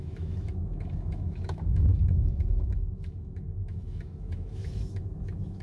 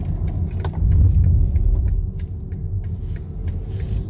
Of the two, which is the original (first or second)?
second